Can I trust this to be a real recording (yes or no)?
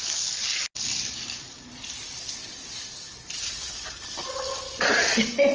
yes